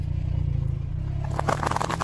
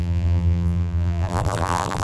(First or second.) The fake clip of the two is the second